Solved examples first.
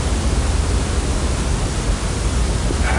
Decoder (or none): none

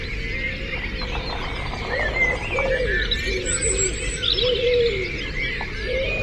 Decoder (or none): none